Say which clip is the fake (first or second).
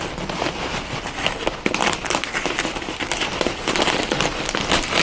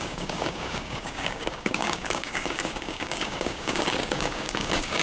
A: second